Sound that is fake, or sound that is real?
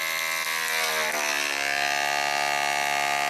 real